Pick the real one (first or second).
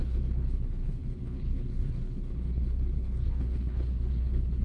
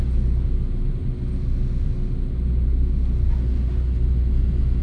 second